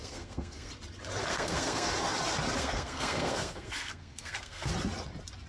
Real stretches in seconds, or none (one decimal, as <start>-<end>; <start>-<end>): 0.7-1.3; 1.9-2.6; 4.7-5.5